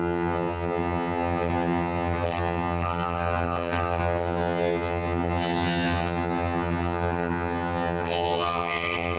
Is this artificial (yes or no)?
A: yes